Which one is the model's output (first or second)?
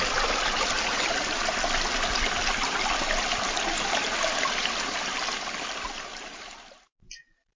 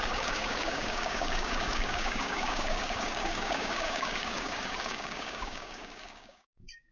second